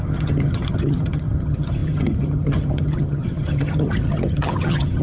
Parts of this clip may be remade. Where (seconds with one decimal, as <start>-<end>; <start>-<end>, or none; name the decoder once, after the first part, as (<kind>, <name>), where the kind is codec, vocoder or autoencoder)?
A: 0.0-5.0 (vocoder, HiFi-GAN)